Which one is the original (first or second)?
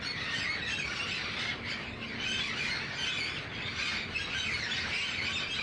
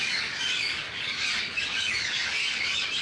first